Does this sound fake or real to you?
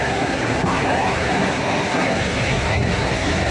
fake